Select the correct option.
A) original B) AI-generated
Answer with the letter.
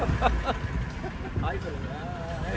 A